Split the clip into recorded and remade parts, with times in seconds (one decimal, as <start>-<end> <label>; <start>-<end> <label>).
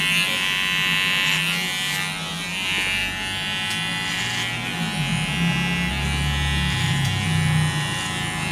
0.0-8.5 recorded